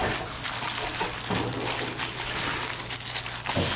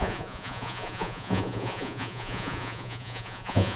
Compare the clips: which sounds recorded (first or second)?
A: first